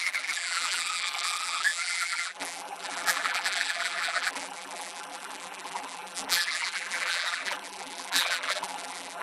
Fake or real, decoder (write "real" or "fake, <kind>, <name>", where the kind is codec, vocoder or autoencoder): fake, vocoder, BigVGAN v2